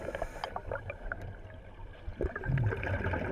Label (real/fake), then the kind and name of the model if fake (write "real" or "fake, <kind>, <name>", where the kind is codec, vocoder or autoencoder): real